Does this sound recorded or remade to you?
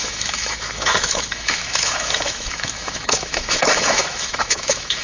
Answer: remade